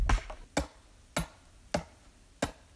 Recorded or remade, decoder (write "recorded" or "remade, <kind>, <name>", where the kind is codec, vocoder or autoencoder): recorded